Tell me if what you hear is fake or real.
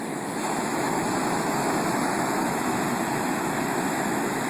fake